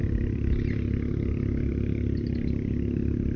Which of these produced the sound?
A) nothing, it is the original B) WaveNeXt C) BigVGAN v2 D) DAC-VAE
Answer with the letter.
A